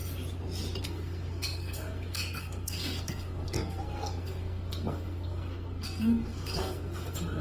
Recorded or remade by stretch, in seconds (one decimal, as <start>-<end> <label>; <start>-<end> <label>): 0.0-0.8 recorded; 0.8-7.4 remade